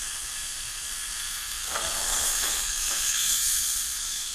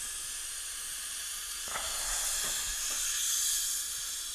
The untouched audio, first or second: second